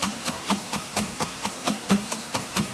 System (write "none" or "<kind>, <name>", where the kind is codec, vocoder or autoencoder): codec, SNAC